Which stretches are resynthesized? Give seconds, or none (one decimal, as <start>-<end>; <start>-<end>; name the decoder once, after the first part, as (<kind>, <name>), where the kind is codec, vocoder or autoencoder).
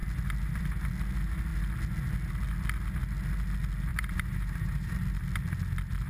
3.9-4.9 (vocoder, BigVGAN v2)